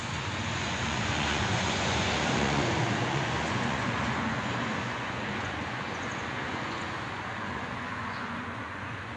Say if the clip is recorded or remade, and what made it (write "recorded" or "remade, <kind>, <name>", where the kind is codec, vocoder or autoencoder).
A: remade, vocoder, Vocos